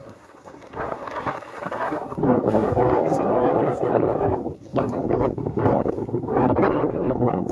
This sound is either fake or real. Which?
fake